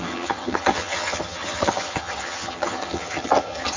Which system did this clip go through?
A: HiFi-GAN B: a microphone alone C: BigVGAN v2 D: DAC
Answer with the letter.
A